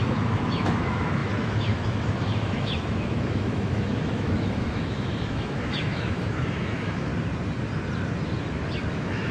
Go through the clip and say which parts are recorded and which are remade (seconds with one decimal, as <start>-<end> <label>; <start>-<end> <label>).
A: 0.0-7.1 remade; 7.1-8.9 recorded; 8.9-9.3 remade